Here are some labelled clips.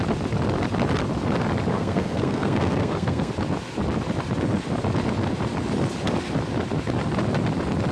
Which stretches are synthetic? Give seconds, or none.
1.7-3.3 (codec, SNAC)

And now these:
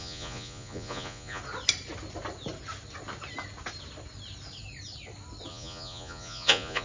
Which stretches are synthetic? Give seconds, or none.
0.0-1.4 (vocoder, Vocos); 5.5-6.8

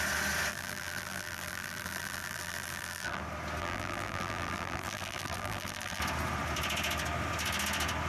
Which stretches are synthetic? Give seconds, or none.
0.5-3.2 (vocoder, BigVGAN v2); 3.6-6.0

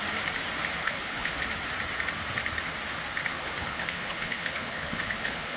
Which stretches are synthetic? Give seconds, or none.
0.8-1.3 (codec, HILCodec); 3.3-5.6